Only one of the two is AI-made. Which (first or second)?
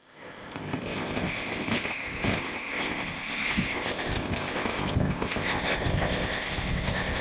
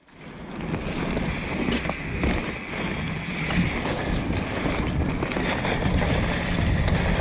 first